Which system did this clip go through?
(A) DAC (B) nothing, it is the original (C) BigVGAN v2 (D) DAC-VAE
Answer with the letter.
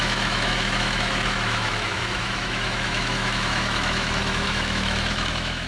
D